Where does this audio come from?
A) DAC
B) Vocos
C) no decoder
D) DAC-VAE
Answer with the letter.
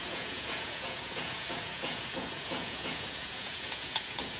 B